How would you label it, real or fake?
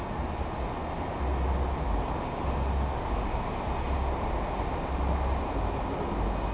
real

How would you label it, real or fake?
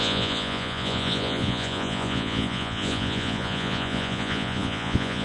fake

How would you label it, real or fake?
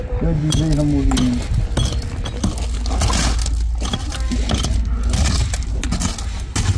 real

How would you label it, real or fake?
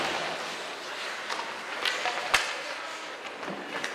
real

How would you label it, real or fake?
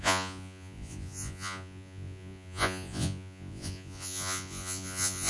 fake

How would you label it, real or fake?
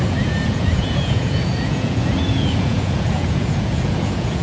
fake